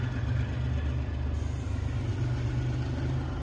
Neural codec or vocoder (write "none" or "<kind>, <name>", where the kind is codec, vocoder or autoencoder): none